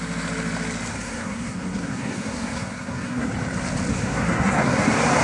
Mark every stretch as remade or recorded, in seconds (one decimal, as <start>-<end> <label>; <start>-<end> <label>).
0.0-0.9 recorded; 0.9-3.3 remade; 3.3-3.9 recorded; 3.9-4.8 remade; 4.8-5.2 recorded